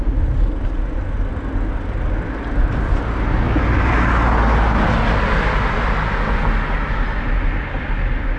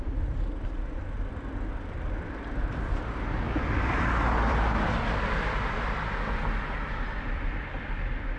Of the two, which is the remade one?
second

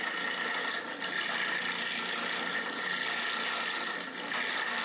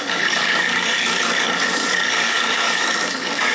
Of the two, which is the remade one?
second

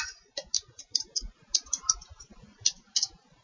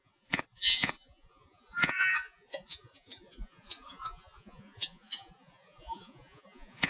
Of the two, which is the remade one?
second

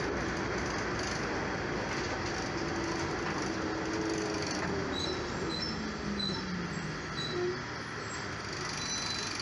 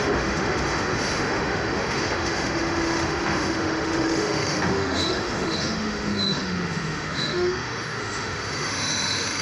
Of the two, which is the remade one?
second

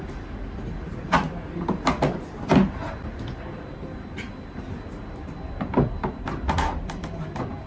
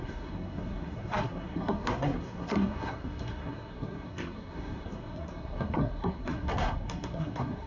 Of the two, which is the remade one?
second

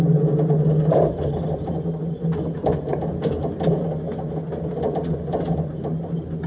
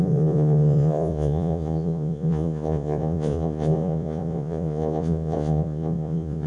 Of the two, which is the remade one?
second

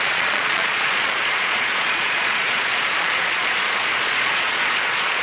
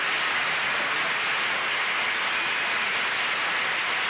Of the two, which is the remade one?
first